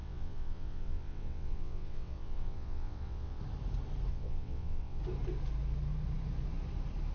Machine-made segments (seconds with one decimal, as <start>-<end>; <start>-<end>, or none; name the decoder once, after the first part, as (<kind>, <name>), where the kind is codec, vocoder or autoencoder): 0.0-3.4 (vocoder, WaveNeXt); 4.1-5.0